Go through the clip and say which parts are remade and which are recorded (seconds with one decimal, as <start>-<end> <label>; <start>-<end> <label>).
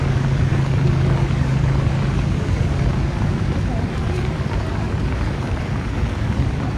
0.0-6.8 remade